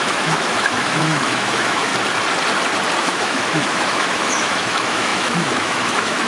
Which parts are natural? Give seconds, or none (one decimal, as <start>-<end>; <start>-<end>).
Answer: 1.9-3.0